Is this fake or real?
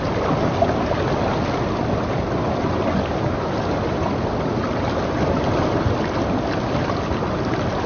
real